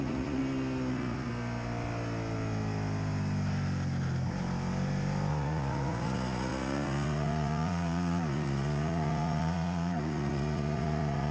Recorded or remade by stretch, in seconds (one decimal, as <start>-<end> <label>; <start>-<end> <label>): 0.0-0.4 remade; 0.4-0.9 recorded; 0.9-1.3 remade; 1.3-5.3 recorded; 5.3-11.3 remade

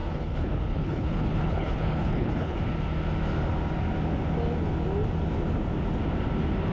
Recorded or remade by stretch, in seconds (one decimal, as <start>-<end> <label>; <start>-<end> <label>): 0.0-2.6 remade; 2.6-6.7 recorded

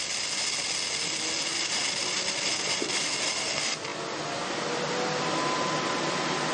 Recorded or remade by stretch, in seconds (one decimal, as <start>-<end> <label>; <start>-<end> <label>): 0.0-6.5 recorded

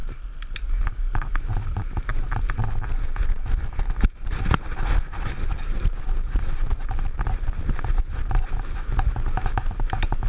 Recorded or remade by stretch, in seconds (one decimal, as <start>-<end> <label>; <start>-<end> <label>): 0.0-1.0 recorded; 1.0-2.1 remade; 2.1-5.7 recorded; 5.7-10.3 remade

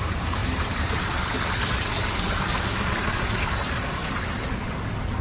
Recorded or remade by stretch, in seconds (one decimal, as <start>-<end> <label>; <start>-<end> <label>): 0.0-4.0 recorded; 4.0-5.2 remade

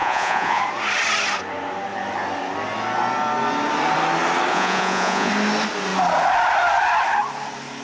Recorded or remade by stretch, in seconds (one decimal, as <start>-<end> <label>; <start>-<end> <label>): 0.0-0.6 remade; 0.6-4.5 recorded; 4.5-5.3 remade; 5.3-7.8 recorded

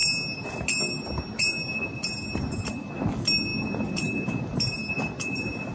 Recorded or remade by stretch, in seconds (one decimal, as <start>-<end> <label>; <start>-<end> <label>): 0.0-5.7 recorded